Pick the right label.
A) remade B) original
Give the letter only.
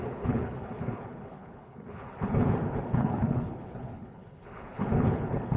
A